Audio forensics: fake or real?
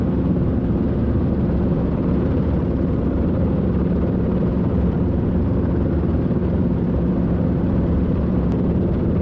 fake